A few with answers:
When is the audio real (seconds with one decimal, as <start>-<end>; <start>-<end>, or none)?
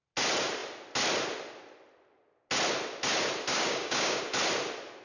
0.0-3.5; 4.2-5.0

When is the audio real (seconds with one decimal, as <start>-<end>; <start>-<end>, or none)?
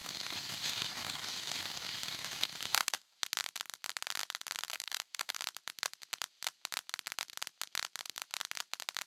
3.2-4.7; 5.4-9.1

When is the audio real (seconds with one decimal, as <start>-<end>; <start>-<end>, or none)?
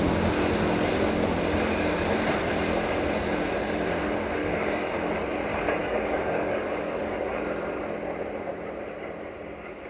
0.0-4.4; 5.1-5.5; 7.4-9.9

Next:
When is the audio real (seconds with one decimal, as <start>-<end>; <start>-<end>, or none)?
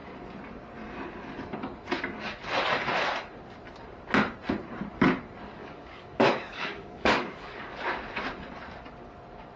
0.0-5.6; 7.8-9.6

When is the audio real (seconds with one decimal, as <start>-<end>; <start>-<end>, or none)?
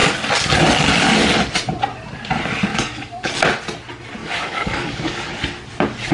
0.0-2.7; 3.3-4.2; 5.3-6.1